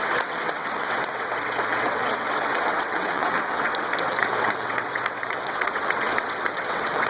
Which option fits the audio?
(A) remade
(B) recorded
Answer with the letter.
A